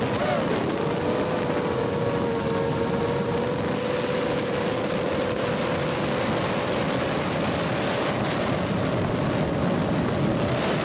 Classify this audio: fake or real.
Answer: real